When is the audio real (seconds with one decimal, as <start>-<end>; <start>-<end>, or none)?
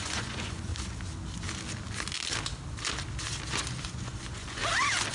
0.7-3.8; 4.6-5.1